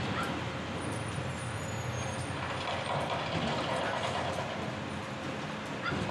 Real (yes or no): yes